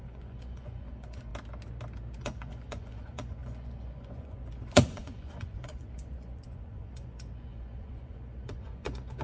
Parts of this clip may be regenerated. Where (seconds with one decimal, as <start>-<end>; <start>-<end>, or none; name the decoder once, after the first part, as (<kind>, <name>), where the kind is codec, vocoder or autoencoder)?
0.0-1.3 (vocoder, Vocos); 2.2-9.2